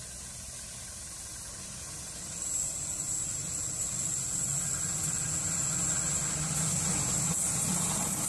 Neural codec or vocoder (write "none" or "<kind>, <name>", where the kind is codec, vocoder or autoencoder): none